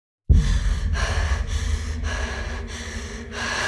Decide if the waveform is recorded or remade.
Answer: recorded